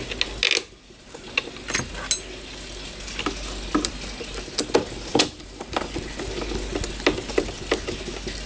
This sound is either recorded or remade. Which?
recorded